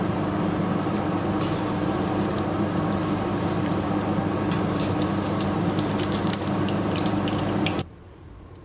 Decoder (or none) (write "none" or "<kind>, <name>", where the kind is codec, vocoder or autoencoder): vocoder, BigVGAN v2